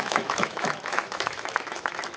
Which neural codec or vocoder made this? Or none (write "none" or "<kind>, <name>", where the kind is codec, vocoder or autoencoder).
autoencoder, DAC-VAE